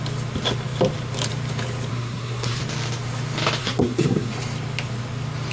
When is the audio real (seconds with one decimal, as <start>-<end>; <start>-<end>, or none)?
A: 0.0-1.9; 2.6-3.6; 4.3-5.5